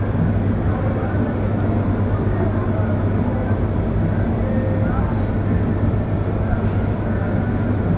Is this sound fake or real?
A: real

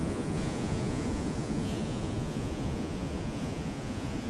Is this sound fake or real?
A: fake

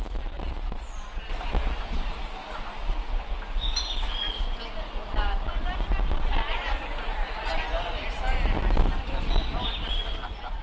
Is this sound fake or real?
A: real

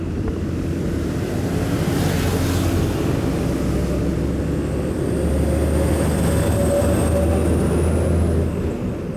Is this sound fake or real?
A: real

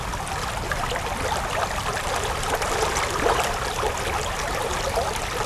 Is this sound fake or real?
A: real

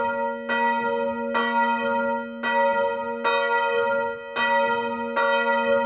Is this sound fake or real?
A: real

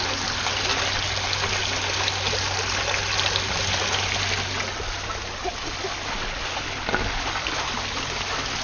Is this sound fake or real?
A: real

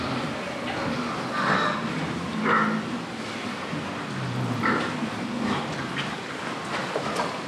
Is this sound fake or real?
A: real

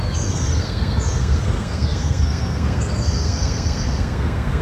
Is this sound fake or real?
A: fake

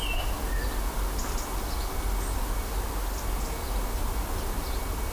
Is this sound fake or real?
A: real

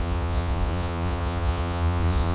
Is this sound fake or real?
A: fake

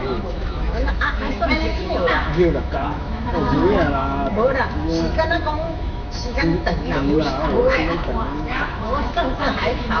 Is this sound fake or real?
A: fake